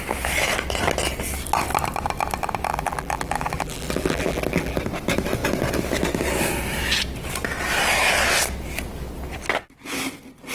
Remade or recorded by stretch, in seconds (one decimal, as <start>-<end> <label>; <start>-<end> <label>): 0.0-2.7 recorded; 2.7-4.8 remade; 4.8-10.5 recorded